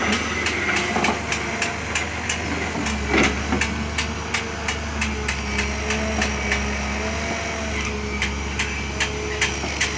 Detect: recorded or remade recorded